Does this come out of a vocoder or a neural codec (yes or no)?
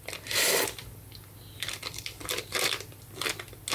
no